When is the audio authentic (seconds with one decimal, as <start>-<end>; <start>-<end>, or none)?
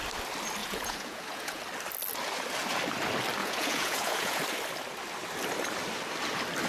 0.0-0.6; 1.6-3.4; 4.4-6.7